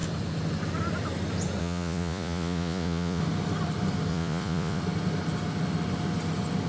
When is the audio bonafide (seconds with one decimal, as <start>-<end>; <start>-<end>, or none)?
0.0-1.6; 3.2-4.1; 4.8-6.7